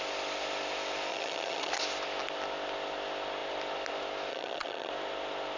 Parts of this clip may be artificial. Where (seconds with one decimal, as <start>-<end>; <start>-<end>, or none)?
1.1-1.7; 4.3-4.9